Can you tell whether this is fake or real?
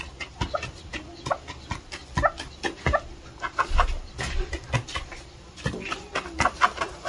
real